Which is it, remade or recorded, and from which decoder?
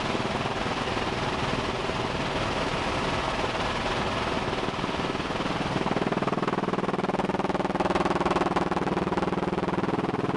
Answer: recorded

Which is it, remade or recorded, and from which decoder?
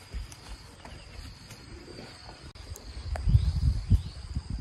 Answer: recorded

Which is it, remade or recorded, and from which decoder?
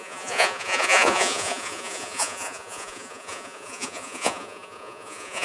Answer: remade, vocoder, Vocos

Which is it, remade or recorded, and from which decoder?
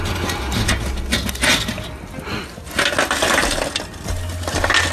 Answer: recorded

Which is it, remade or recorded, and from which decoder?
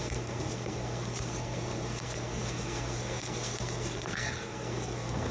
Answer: remade, codec, SNAC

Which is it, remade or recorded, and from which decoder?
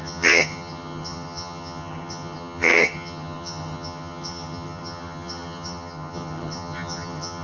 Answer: remade, vocoder, HiFi-GAN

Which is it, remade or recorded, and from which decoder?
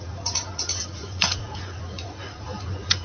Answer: remade, vocoder, Vocos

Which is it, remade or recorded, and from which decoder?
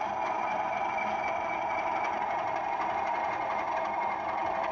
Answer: remade, vocoder, BigVGAN v2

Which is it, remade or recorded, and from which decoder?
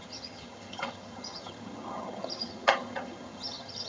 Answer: remade, vocoder, HiFi-GAN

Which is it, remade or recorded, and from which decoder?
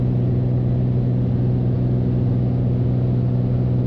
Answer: recorded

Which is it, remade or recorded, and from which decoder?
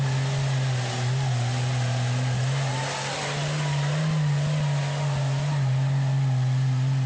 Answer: recorded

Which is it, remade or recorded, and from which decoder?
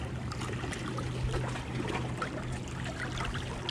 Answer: recorded